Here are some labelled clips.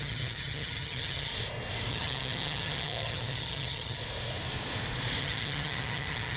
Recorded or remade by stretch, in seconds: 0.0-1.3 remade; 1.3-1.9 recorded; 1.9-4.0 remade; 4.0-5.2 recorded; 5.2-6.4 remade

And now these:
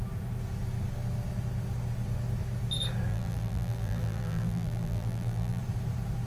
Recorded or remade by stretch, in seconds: 0.0-3.1 recorded; 3.1-5.6 remade; 5.6-6.3 recorded

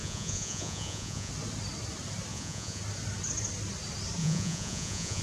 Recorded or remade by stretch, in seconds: 0.0-1.3 remade; 1.3-2.3 recorded; 2.3-2.8 remade; 2.8-4.2 recorded; 4.2-5.2 remade

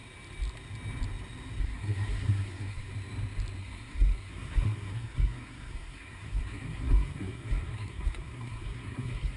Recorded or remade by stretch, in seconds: 0.0-1.6 recorded; 1.6-2.8 remade; 2.8-3.6 recorded; 3.6-9.4 remade